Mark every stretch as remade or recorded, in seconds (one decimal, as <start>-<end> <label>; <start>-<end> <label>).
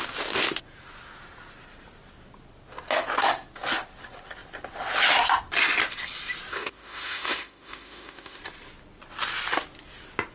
0.0-6.5 recorded; 6.5-8.4 remade; 8.4-10.3 recorded